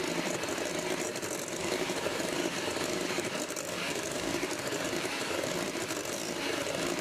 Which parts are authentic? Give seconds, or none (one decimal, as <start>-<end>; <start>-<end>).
0.0-1.6; 5.5-7.0